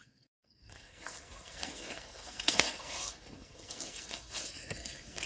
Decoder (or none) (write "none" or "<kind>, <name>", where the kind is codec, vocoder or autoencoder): codec, SNAC